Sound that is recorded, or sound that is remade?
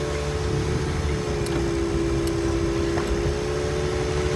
recorded